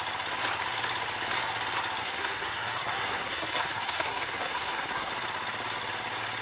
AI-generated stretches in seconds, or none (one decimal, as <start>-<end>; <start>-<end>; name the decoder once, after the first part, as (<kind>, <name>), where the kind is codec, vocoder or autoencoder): 2.0-5.1 (codec, SNAC)